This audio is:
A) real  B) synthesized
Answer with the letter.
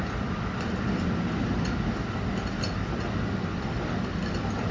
A